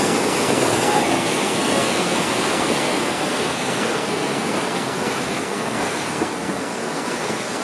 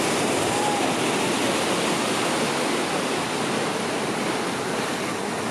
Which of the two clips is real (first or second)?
second